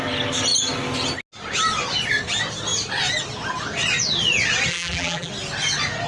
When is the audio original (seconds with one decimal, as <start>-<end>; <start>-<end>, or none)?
0.0-4.7; 5.3-6.1